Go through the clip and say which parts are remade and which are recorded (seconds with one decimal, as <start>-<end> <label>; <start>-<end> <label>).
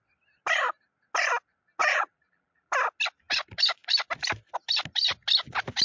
0.0-1.8 recorded; 1.8-2.7 remade; 2.7-5.8 recorded